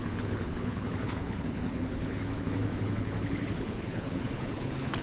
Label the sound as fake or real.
fake